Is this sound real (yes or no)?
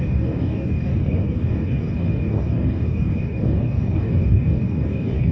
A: no